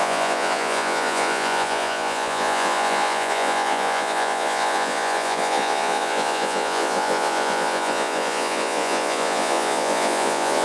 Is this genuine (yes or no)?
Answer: no